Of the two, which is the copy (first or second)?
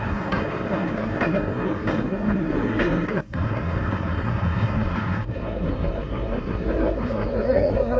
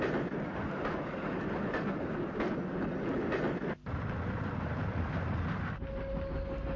first